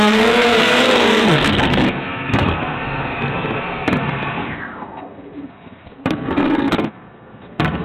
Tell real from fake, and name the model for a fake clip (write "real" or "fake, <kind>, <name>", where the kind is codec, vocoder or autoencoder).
fake, codec, SNAC